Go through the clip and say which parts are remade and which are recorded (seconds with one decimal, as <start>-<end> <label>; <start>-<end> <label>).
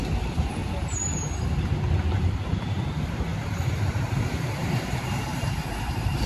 0.0-0.6 remade; 0.6-2.1 recorded; 2.1-6.3 remade